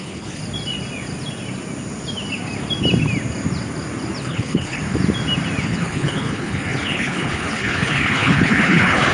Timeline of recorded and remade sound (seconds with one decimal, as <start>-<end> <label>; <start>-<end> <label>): 0.0-0.4 remade; 0.4-4.2 recorded; 4.2-4.8 remade; 4.8-5.6 recorded; 5.6-9.1 remade